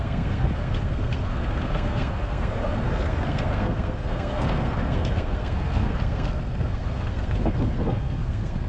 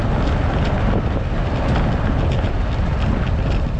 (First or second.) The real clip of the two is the second